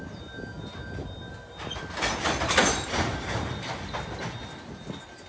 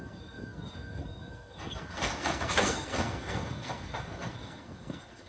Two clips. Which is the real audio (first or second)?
first